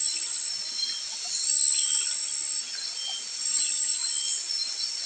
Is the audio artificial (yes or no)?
no